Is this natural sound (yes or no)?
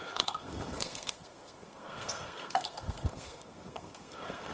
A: no